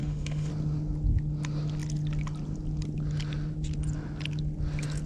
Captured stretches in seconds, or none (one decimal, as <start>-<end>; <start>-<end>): 0.5-5.1